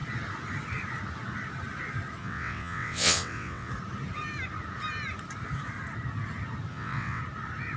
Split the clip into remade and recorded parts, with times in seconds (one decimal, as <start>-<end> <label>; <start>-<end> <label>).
0.0-2.2 recorded; 2.2-3.7 remade; 3.7-6.7 recorded; 6.7-7.2 remade; 7.2-7.8 recorded